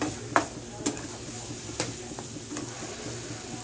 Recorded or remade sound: recorded